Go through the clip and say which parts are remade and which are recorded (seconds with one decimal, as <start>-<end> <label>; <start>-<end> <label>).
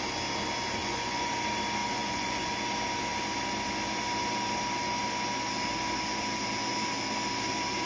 0.0-0.8 recorded; 0.8-1.3 remade; 1.3-1.8 recorded; 1.8-2.6 remade; 2.6-7.9 recorded